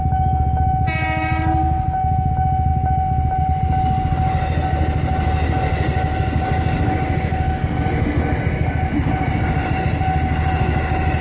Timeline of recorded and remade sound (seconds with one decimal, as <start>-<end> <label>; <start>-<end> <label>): 0.0-1.6 recorded; 1.6-2.3 remade; 2.3-11.2 recorded